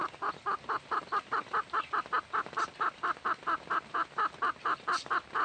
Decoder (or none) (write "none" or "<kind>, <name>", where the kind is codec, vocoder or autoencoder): none